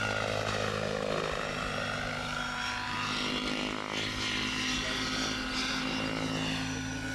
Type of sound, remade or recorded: recorded